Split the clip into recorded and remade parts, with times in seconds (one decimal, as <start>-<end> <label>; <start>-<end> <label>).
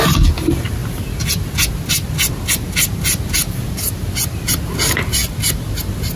0.0-6.2 recorded